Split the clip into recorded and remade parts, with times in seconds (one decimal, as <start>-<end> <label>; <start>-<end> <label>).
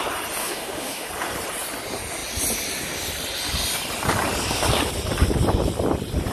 0.0-0.4 recorded; 0.4-1.1 remade; 1.1-6.3 recorded